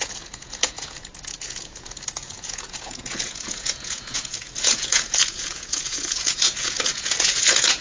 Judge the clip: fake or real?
fake